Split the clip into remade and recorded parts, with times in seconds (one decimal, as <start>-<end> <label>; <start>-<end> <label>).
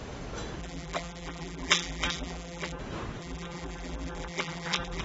0.0-0.6 recorded; 0.6-2.8 remade; 2.8-3.2 recorded; 3.2-5.0 remade